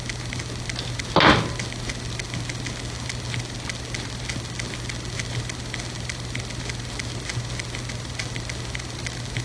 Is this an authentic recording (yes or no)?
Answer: yes